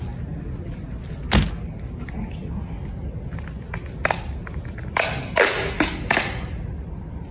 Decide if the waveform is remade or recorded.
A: recorded